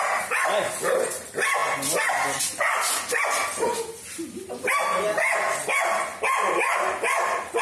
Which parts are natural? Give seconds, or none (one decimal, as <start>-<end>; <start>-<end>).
0.0-7.6